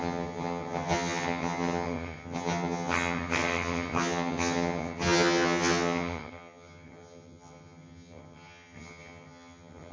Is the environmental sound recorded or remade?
remade